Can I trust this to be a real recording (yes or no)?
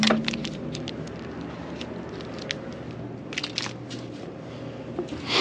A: yes